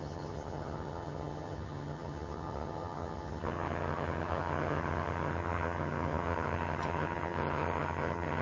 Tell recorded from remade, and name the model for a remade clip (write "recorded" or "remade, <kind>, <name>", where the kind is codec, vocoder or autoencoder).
remade, vocoder, HiFi-GAN